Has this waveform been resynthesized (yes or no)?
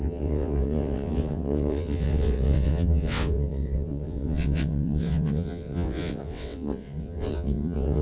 yes